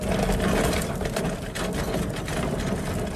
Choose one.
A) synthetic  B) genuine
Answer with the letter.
B